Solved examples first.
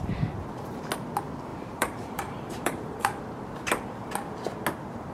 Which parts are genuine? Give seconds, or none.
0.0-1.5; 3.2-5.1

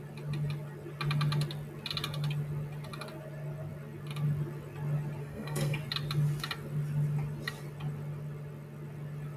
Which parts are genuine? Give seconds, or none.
0.0-5.2; 5.8-9.4

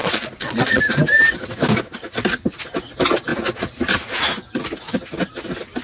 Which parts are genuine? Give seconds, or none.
0.8-5.8

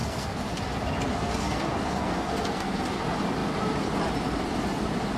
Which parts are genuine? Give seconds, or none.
0.6-1.1; 3.0-5.2

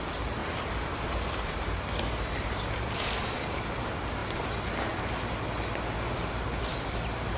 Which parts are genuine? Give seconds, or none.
0.0-0.4; 3.6-7.4

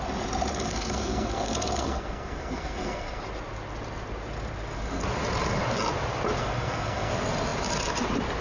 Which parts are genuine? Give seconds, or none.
0.0-0.5; 3.2-6.4; 7.1-8.4

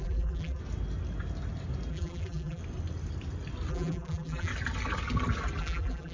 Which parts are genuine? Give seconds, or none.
0.6-1.9; 2.6-3.7; 4.5-5.6